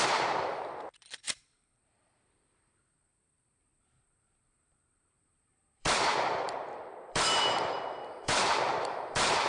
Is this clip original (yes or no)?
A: no